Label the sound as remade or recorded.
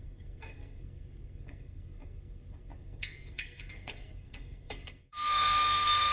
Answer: remade